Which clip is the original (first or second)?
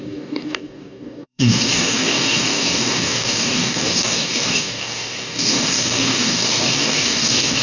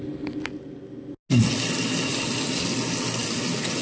second